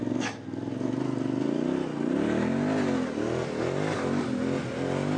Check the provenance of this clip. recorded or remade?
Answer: recorded